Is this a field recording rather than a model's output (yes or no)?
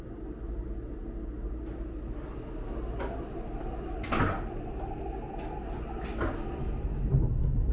yes